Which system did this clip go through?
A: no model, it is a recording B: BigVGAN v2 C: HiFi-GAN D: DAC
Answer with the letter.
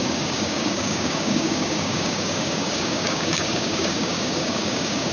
D